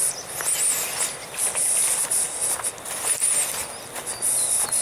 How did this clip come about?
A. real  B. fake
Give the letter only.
A